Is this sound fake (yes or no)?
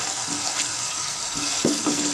yes